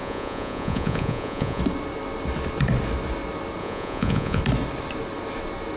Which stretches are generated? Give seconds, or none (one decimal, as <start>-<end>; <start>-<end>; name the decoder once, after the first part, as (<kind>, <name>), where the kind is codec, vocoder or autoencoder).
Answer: 0.0-1.6 (vocoder, Vocos); 3.6-4.4